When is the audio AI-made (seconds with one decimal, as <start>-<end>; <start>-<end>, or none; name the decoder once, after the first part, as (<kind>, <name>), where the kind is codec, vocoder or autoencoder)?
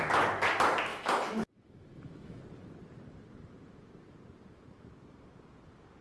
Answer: 0.9-2.4 (autoencoder, DAC-VAE)